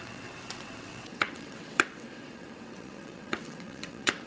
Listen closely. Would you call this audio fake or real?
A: fake